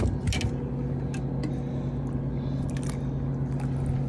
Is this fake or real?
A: real